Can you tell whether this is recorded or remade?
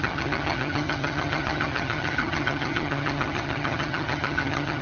remade